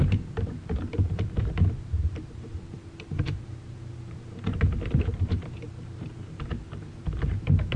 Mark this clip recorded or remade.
remade